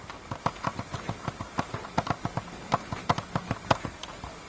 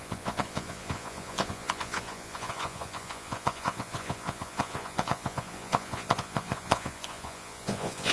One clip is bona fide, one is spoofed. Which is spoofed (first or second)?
second